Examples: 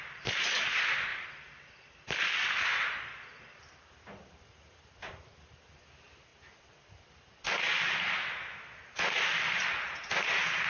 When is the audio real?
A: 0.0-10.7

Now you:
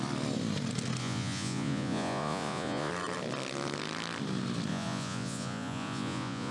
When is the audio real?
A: 0.0-1.0; 2.9-4.7

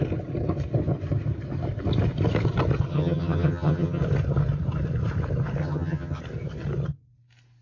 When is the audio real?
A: 0.0-2.9; 4.0-5.6; 6.2-7.6

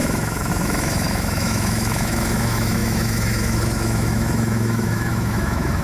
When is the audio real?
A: none

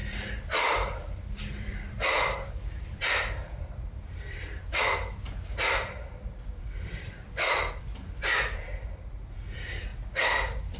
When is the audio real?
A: 4.8-6.3; 7.8-10.8

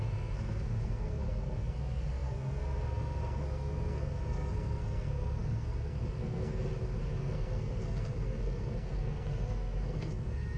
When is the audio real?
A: 6.7-7.2